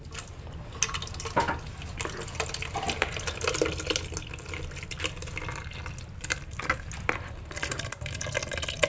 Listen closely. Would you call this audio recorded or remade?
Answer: recorded